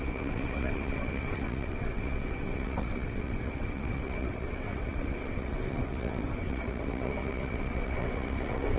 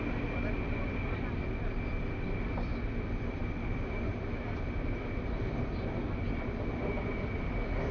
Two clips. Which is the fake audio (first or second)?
first